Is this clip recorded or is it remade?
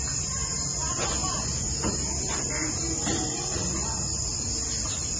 recorded